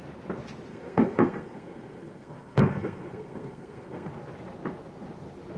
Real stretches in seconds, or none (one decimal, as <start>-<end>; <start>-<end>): 0.0-0.7; 4.1-5.6